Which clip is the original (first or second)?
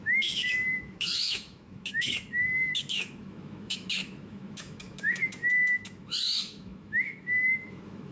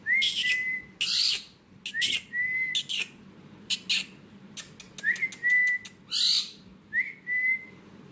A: second